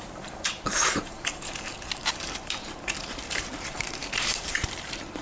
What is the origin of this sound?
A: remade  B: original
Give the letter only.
A